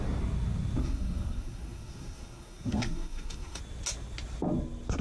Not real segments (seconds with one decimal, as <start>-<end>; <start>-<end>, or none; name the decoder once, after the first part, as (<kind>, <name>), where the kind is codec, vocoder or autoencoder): 0.8-3.6 (codec, SNAC)